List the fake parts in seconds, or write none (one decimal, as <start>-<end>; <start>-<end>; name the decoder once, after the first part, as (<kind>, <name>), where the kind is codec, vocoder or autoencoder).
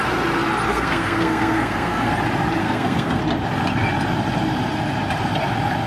0.7-2.1 (codec, SNAC); 2.6-3.2